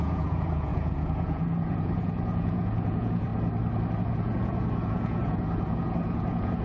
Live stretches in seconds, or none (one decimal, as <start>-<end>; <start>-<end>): 3.3-4.0